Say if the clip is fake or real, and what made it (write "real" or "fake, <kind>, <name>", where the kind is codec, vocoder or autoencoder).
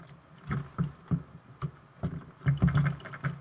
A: real